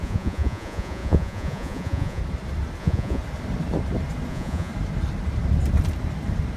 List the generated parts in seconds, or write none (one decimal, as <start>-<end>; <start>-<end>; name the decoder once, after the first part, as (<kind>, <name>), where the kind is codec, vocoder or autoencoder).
0.0-2.2 (vocoder, Vocos); 2.8-3.2; 4.3-4.7